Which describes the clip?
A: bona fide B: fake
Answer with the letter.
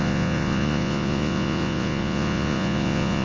B